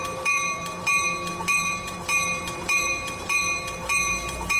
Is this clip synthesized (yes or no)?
yes